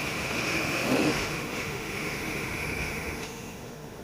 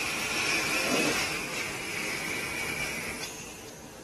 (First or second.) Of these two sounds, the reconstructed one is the first